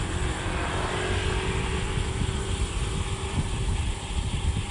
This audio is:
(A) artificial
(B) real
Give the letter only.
B